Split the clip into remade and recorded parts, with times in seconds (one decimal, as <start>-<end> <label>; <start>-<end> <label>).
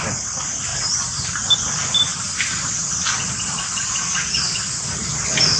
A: 0.0-0.7 recorded; 0.7-1.6 remade; 1.6-5.6 recorded